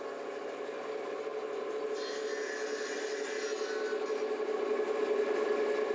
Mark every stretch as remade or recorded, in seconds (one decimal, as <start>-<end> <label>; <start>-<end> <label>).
0.0-5.9 recorded